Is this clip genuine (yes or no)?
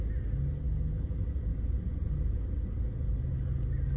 yes